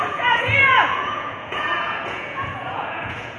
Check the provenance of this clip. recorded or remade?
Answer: remade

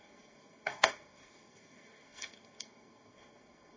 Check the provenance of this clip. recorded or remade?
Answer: remade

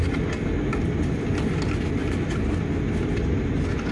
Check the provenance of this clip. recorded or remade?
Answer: recorded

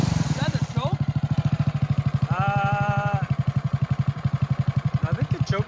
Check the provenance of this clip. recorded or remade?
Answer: recorded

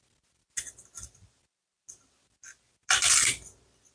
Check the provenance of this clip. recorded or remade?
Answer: recorded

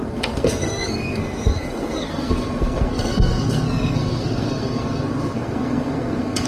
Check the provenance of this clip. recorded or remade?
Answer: remade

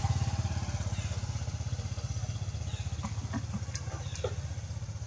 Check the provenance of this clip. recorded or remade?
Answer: recorded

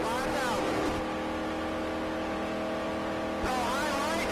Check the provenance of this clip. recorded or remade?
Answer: recorded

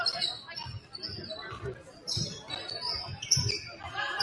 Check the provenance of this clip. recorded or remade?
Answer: recorded